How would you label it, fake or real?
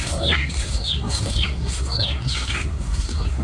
fake